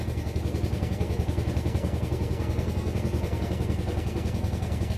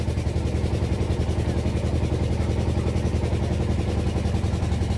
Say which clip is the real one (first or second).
second